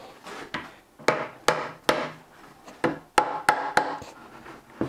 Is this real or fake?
real